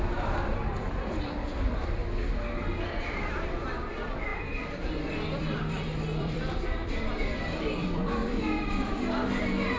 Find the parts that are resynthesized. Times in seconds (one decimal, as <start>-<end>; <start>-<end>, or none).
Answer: 0.0-2.0; 3.0-9.8